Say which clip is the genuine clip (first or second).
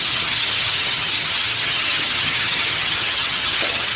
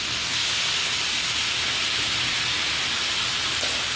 second